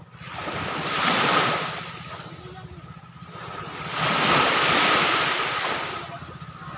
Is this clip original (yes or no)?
yes